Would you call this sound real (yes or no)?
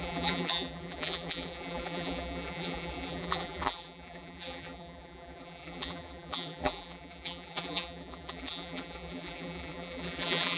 no